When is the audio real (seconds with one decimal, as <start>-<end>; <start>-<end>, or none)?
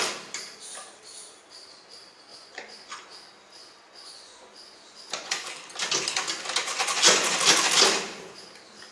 0.0-2.3; 2.9-3.6; 5.5-6.6; 7.4-8.9